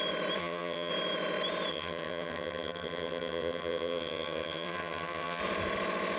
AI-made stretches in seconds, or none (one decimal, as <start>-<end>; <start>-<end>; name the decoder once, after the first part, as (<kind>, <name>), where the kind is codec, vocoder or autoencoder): 0.4-0.9 (vocoder, HiFi-GAN); 1.7-5.4